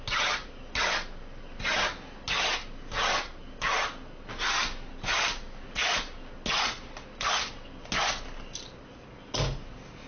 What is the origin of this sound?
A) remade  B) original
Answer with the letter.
B